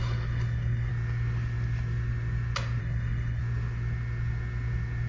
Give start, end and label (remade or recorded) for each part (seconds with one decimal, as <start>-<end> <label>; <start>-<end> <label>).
0.0-0.9 remade; 0.9-2.8 recorded; 2.8-3.4 remade; 3.4-5.1 recorded